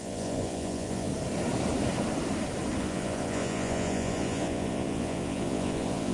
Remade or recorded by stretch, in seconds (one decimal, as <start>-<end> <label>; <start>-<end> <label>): 0.0-1.1 remade; 1.1-2.8 recorded; 2.8-6.1 remade

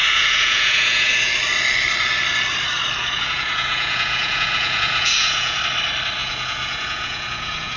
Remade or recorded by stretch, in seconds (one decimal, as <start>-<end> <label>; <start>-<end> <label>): 0.0-1.3 remade; 1.3-3.0 recorded; 3.0-5.6 remade; 5.6-6.2 recorded; 6.2-7.8 remade